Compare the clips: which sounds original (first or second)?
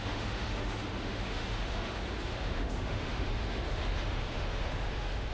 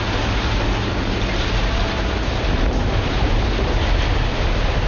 second